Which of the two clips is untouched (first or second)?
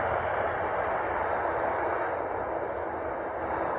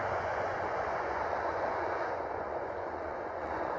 first